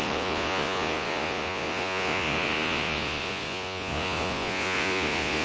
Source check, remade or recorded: remade